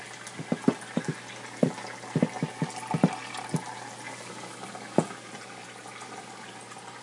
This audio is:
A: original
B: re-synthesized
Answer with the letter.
A